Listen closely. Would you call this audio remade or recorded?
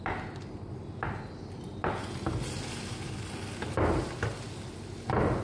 recorded